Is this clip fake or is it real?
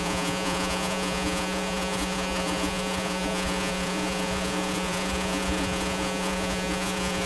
fake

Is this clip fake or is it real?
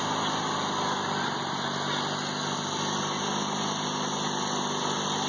real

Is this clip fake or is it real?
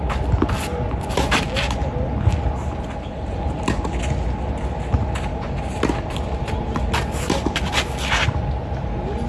real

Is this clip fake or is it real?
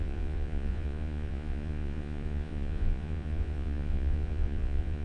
fake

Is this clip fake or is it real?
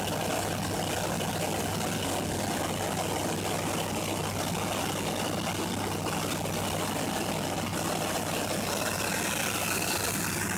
real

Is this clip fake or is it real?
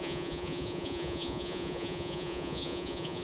fake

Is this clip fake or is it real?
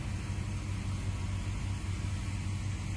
real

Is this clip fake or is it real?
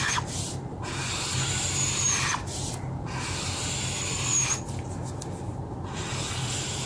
real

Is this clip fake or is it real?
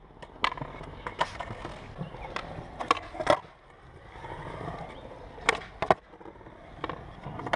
real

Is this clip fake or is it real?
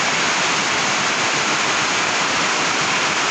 real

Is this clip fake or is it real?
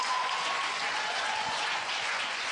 fake